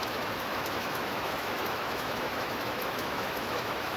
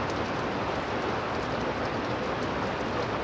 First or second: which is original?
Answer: second